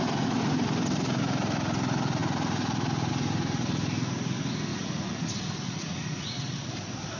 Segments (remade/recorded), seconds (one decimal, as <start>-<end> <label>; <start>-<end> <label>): 0.0-4.7 recorded; 4.7-5.3 remade; 5.3-5.8 recorded; 5.8-6.3 remade; 6.3-7.2 recorded